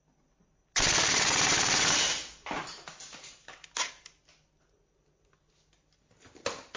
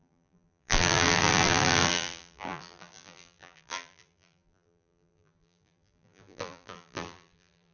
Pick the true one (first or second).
first